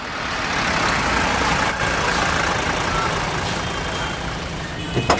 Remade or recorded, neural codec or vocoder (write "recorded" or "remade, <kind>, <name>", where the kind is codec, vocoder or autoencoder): recorded